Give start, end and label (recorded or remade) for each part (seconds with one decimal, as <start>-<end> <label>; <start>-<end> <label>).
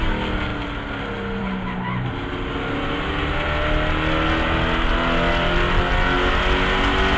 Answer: 0.0-7.2 recorded